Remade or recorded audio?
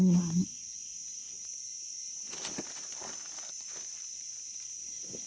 recorded